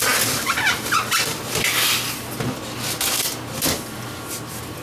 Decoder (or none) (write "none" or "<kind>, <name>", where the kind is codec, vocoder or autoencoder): none